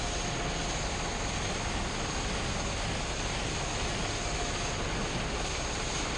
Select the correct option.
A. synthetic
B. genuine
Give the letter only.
B